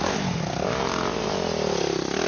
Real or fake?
real